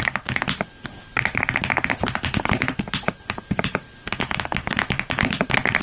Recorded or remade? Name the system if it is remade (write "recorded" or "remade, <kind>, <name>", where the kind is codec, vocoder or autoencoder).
recorded